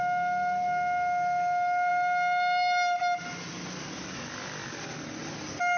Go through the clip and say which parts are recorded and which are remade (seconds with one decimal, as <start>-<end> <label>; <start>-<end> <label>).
0.0-5.8 recorded